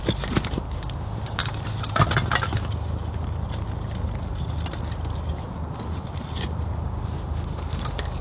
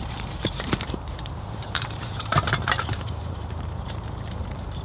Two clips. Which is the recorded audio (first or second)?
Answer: first